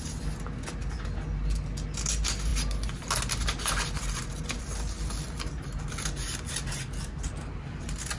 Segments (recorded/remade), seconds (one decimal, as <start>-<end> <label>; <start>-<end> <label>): 0.0-8.2 recorded